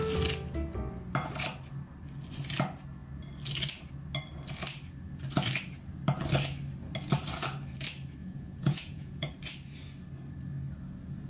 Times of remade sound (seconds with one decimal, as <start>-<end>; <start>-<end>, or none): 8.2-9.3